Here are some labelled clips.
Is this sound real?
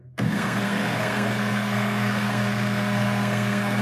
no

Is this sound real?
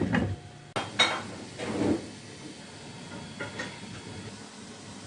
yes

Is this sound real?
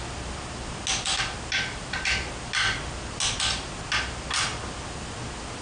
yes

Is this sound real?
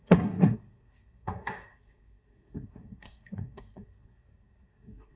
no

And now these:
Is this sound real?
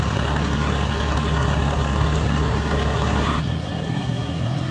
no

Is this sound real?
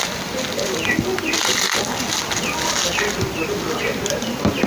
yes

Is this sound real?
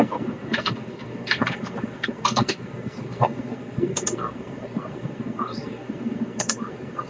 no